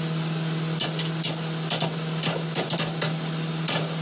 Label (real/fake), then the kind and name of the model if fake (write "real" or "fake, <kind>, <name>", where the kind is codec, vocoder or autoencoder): real